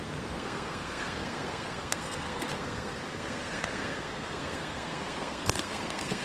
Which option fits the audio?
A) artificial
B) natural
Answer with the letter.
A